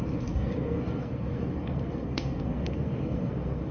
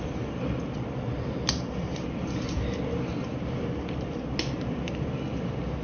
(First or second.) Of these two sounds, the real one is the second